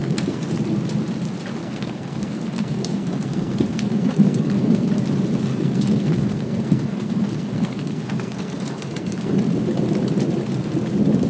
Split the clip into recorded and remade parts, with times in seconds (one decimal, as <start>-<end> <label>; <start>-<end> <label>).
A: 0.0-0.5 remade; 0.5-1.6 recorded; 1.6-4.9 remade; 4.9-5.5 recorded; 5.5-9.3 remade; 9.3-11.3 recorded